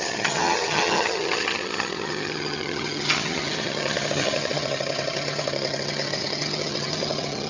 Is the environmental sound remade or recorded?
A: remade